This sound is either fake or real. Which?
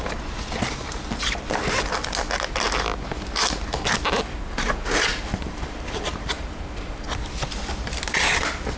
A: real